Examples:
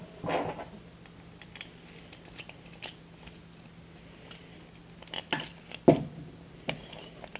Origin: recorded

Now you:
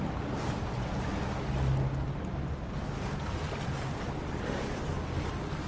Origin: recorded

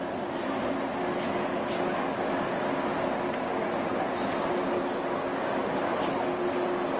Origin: recorded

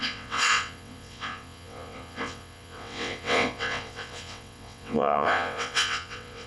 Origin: remade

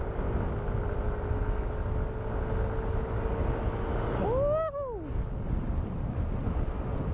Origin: recorded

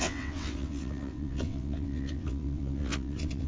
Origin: remade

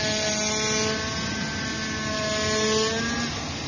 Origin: recorded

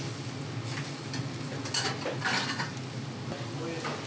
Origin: recorded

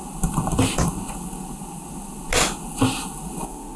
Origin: recorded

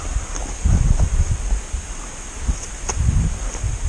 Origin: recorded